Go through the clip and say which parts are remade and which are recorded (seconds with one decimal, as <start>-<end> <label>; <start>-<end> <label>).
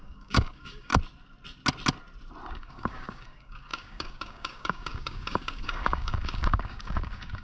0.0-0.9 remade; 0.9-2.5 recorded; 2.5-7.4 remade